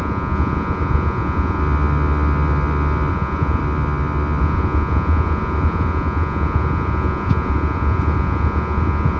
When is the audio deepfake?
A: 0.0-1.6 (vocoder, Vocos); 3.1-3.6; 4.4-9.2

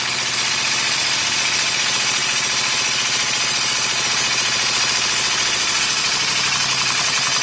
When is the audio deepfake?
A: none

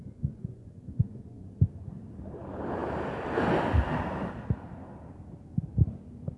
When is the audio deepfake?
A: 0.0-1.5 (vocoder, Vocos)

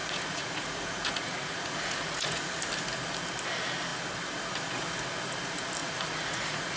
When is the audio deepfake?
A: 0.0-2.6 (vocoder, Vocos); 5.8-6.8